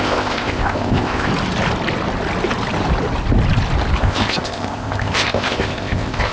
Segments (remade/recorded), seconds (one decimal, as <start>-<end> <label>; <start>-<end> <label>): 0.0-1.3 remade; 1.3-4.0 recorded; 4.0-6.3 remade